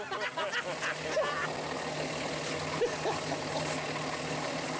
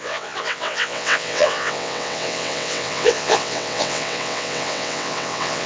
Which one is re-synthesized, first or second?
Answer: second